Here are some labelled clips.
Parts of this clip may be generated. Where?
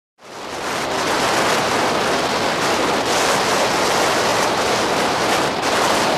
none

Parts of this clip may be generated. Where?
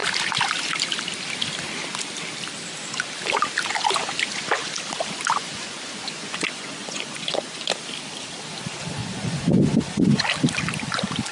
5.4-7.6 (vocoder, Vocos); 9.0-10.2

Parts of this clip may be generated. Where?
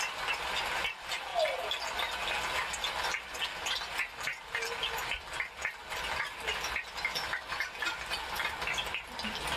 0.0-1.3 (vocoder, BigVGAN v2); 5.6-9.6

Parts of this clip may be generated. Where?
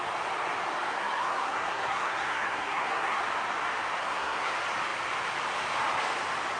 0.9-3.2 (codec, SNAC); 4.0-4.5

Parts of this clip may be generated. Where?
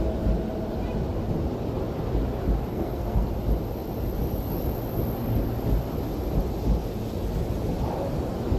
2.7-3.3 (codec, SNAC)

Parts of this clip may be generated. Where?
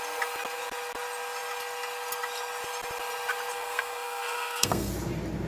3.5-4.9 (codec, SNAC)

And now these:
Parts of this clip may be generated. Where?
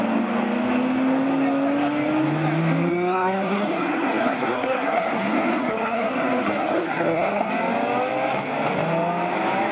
2.9-7.5 (codec, SNAC)